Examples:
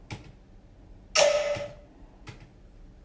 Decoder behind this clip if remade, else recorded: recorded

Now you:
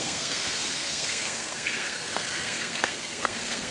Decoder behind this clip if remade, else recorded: remade, codec, SNAC